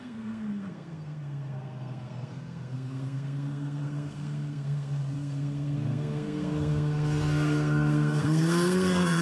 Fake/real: fake